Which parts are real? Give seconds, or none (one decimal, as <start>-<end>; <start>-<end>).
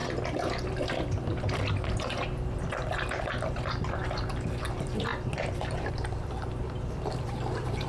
0.0-2.5